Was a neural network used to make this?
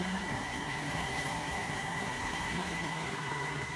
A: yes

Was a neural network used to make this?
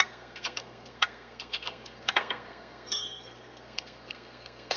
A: yes